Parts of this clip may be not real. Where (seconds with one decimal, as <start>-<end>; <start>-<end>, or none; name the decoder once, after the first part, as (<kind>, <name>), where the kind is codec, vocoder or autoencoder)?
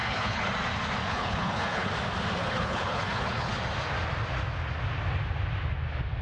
0.0-0.5 (codec, HILCodec); 1.0-1.9; 2.4-3.5